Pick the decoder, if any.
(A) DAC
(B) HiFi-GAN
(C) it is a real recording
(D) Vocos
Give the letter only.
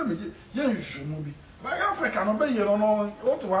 C